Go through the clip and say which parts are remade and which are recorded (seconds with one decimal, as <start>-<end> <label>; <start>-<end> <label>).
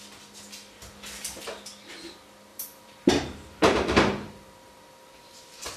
0.0-2.5 recorded; 2.5-5.8 remade